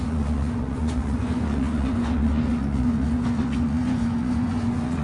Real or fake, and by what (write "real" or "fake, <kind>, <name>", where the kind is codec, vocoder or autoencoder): fake, vocoder, Vocos